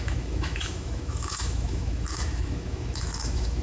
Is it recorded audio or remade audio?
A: remade